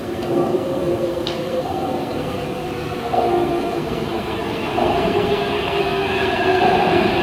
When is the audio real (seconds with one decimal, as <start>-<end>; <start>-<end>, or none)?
none